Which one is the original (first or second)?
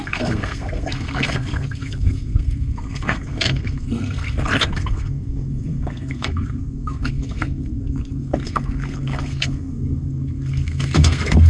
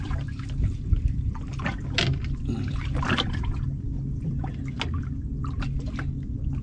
second